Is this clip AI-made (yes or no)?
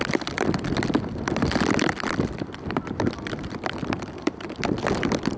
yes